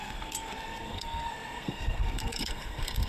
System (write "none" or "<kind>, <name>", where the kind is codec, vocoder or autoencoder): codec, SNAC